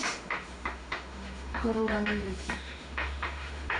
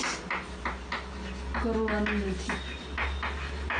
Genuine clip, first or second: second